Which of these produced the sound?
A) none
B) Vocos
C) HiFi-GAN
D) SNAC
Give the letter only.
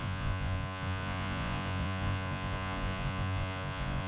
B